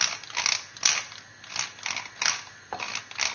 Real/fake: real